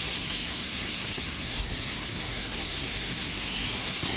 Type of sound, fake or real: fake